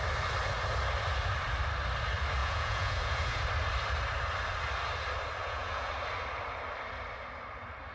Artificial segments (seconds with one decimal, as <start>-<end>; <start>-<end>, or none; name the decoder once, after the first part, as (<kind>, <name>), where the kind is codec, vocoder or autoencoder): 2.4-3.4 (vocoder, Vocos); 5.4-5.9